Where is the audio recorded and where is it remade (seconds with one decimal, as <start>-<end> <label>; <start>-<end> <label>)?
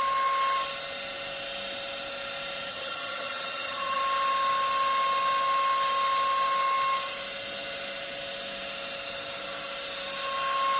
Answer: 0.0-2.7 recorded; 2.7-4.0 remade; 4.0-10.8 recorded